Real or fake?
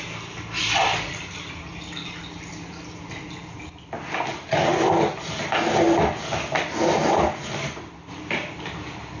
real